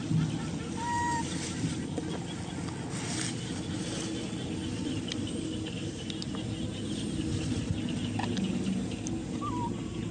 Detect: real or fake real